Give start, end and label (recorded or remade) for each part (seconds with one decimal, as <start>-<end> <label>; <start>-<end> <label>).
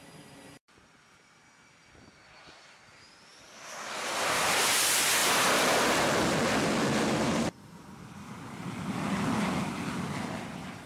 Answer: 0.0-10.9 remade